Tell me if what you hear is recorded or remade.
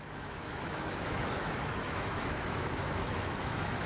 remade